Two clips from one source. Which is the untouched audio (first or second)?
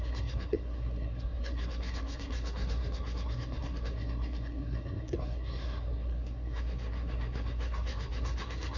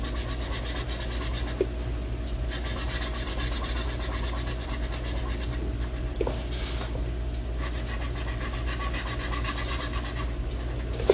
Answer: second